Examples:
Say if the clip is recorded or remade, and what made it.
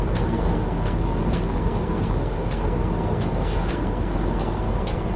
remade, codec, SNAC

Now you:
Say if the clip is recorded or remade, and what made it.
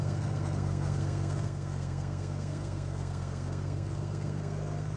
remade, codec, SNAC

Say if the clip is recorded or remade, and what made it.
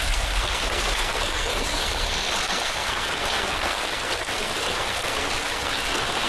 remade, codec, SNAC